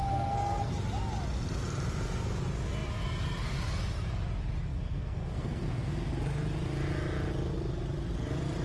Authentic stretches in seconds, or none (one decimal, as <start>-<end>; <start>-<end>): 0.7-4.7; 6.1-8.6